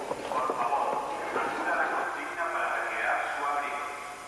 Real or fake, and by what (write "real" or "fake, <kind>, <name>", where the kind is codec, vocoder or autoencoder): real